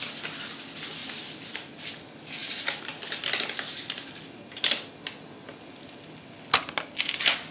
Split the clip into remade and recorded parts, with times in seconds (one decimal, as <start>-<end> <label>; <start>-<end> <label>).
0.0-1.0 recorded; 1.0-1.8 remade; 1.8-2.4 recorded; 2.4-2.9 remade; 2.9-7.5 recorded